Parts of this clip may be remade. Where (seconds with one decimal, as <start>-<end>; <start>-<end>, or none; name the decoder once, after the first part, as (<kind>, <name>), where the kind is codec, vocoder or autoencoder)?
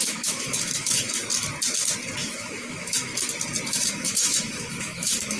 0.0-1.2 (autoencoder, DAC-VAE); 2.2-3.1; 3.7-5.4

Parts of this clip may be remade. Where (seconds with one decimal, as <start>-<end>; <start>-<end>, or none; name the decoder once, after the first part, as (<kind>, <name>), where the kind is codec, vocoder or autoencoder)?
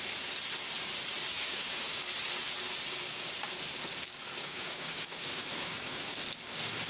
1.3-2.0 (autoencoder, DAC-VAE); 4.4-6.1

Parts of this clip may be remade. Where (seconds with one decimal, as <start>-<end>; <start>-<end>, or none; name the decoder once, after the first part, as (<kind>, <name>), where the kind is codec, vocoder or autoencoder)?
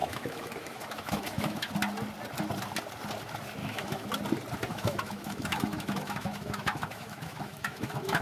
0.0-1.7 (autoencoder, DAC-VAE); 3.6-4.1; 4.7-8.2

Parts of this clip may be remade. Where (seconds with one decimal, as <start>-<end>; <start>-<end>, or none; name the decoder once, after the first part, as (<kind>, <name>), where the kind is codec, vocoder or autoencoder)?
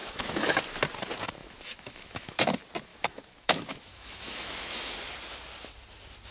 0.0-0.6 (autoencoder, DAC-VAE); 1.4-2.5; 2.9-4.9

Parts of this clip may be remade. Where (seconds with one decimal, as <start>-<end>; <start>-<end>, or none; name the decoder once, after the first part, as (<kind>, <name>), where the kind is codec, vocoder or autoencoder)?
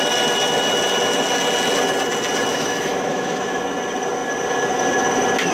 2.5-3.6 (autoencoder, DAC-VAE)